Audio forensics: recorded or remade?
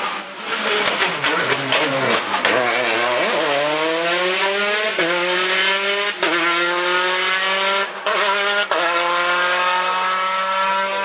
recorded